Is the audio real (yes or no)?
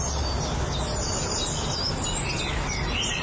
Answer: yes